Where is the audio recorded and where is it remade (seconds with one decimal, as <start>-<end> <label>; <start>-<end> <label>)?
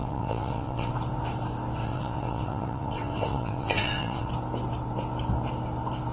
0.0-0.9 remade; 0.9-1.8 recorded; 1.8-4.3 remade; 4.3-6.1 recorded